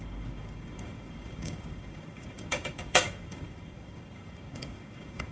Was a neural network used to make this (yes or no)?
yes